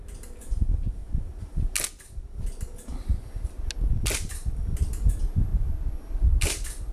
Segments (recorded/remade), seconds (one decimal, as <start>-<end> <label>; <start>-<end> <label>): 0.0-6.9 recorded